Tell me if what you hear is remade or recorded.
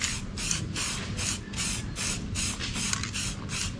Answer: recorded